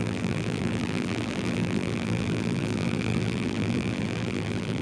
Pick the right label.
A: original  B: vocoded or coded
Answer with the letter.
B